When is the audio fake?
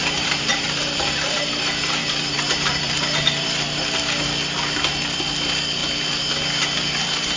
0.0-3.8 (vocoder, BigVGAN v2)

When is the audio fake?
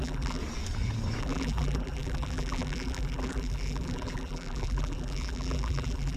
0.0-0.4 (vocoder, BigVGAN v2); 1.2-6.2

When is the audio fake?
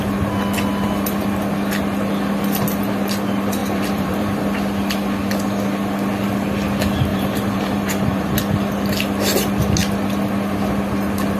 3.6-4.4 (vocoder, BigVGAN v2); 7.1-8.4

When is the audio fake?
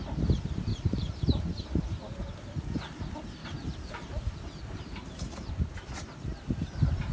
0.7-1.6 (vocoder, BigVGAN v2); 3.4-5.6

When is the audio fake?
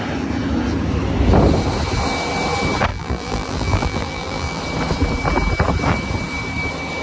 2.9-4.6 (vocoder, BigVGAN v2)